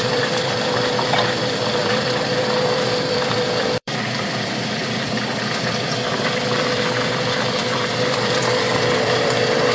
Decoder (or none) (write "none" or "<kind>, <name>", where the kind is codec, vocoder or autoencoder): vocoder, BigVGAN v2